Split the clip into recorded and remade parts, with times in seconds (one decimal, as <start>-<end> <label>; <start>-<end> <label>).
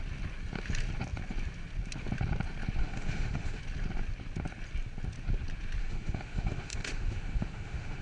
0.0-2.8 recorded; 2.8-3.6 remade; 3.6-5.8 recorded; 5.8-8.0 remade